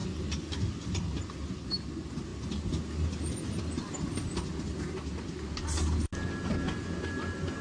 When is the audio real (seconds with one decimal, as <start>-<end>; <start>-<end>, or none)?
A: 0.0-7.6